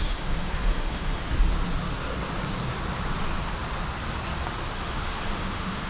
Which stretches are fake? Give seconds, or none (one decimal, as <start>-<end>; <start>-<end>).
0.0-1.2; 4.7-5.9

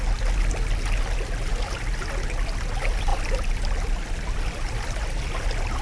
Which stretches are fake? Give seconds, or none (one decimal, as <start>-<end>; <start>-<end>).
3.1-5.8

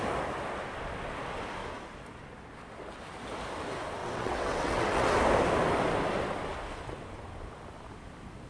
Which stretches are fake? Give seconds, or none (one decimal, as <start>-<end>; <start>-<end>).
4.0-5.1

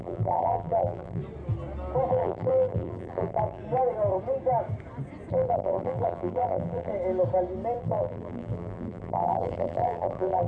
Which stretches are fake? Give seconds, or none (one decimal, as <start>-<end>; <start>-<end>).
0.0-1.2; 2.1-3.6; 5.3-6.9; 7.8-10.5